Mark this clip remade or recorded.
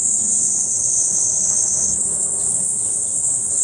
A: remade